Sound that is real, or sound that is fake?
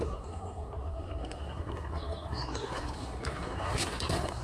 fake